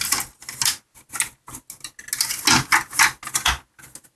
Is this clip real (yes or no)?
yes